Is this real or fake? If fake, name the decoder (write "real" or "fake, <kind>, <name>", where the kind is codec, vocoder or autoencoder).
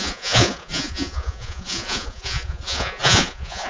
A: fake, vocoder, Vocos